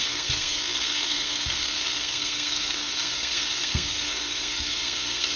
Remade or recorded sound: remade